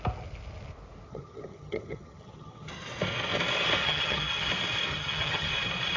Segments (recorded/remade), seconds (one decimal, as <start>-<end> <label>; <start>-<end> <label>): 0.0-1.1 recorded; 1.1-2.7 remade; 2.7-3.8 recorded; 3.8-4.5 remade; 4.5-4.9 recorded; 4.9-5.6 remade; 5.6-6.0 recorded